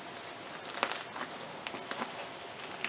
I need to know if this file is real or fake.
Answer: real